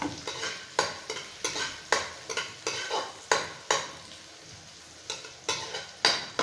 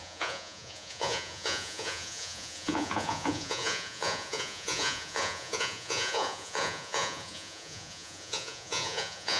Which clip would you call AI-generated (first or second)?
second